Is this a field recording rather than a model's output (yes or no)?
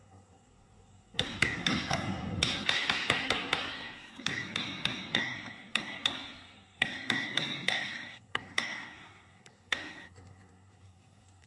no